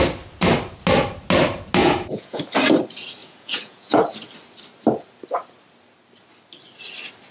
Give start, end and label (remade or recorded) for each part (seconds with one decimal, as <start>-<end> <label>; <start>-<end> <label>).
0.0-1.8 recorded; 1.8-2.4 remade; 2.4-3.2 recorded; 3.2-4.0 remade; 4.0-7.3 recorded